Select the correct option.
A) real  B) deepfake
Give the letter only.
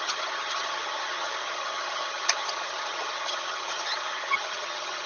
B